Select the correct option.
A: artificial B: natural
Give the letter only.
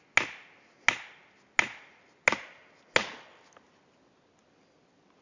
B